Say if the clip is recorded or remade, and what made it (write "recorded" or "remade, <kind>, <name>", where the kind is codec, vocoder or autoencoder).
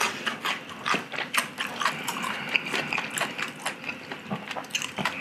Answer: recorded